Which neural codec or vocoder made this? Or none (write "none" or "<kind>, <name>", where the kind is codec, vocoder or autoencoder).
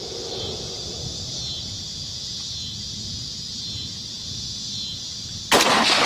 none